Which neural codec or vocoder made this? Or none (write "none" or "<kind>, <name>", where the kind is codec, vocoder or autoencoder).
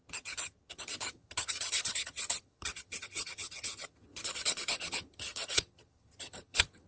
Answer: vocoder, HiFi-GAN